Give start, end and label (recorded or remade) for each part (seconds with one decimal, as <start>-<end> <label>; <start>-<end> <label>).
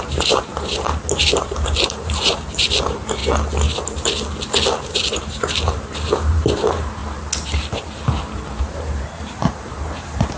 0.0-0.5 remade; 0.5-1.2 recorded; 1.2-3.2 remade; 3.2-4.8 recorded; 4.8-7.0 remade; 7.0-8.6 recorded; 8.6-10.4 remade